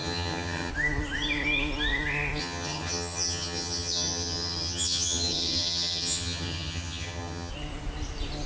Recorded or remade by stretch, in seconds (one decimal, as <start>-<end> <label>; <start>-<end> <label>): 0.0-0.7 remade; 0.7-2.4 recorded; 2.4-7.5 remade; 7.5-8.5 recorded